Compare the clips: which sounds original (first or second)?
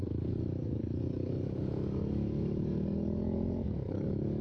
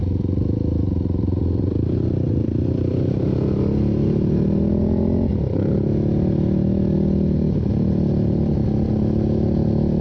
second